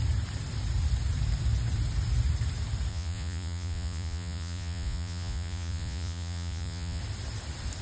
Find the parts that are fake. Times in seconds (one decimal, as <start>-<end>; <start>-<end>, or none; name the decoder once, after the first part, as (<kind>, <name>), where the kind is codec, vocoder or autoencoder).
2.9-7.0 (vocoder, Vocos)